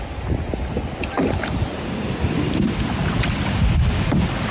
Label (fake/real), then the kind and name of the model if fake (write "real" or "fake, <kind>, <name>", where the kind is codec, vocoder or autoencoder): real